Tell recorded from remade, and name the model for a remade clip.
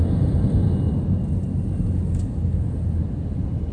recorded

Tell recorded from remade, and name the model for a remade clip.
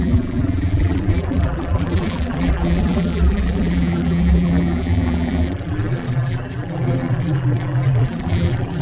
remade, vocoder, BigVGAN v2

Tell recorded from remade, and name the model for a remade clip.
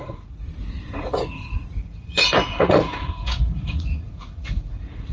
remade, vocoder, Vocos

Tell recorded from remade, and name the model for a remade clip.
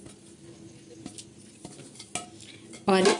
recorded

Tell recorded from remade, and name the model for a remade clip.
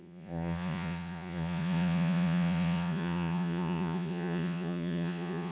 remade, vocoder, Vocos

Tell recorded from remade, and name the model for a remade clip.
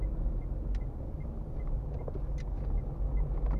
recorded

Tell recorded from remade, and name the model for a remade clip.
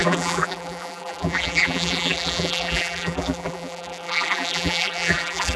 remade, vocoder, BigVGAN v2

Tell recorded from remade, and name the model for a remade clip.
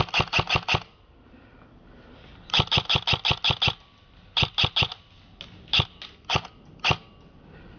recorded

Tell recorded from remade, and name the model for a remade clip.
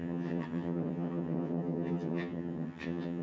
remade, vocoder, HiFi-GAN